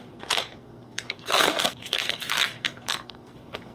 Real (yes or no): no